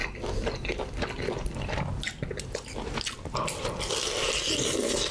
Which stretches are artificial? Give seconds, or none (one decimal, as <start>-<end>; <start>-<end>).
none